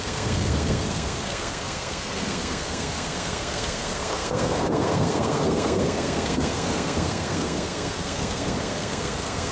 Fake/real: fake